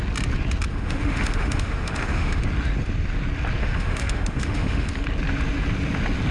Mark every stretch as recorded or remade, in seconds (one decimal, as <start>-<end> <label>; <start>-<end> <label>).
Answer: 0.0-0.7 recorded; 0.7-2.4 remade; 2.4-3.6 recorded; 3.6-4.9 remade; 4.9-6.3 recorded

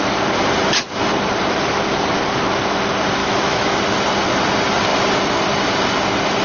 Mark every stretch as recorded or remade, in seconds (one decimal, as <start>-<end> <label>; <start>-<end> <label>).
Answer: 0.0-3.2 recorded; 3.2-3.8 remade; 3.8-6.4 recorded